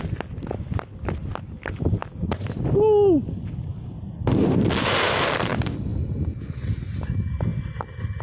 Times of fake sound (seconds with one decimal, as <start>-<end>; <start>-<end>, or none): none